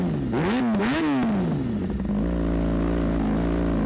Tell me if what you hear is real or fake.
real